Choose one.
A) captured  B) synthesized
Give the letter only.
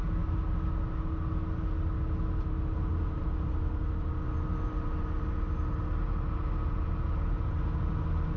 A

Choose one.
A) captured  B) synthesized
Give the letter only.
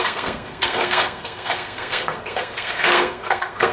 B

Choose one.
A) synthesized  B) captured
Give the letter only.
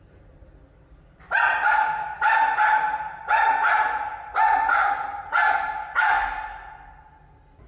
B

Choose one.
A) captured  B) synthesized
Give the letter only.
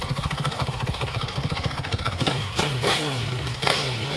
B